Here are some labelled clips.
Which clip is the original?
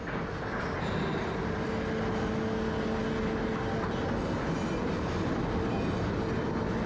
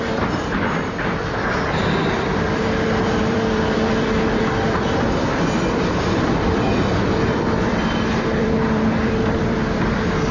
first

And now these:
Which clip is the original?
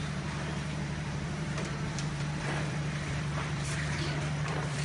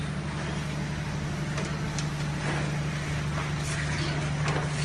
second